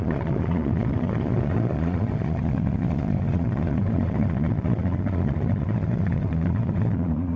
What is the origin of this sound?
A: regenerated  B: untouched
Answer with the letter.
A